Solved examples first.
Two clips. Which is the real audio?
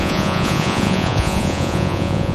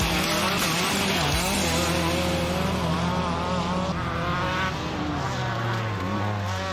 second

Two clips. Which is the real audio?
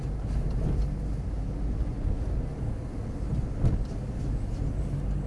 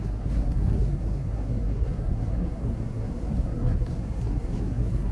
first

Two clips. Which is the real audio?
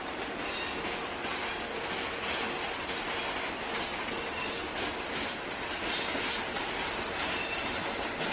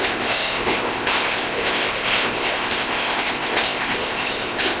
first